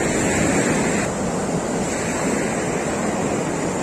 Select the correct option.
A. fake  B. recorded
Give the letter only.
B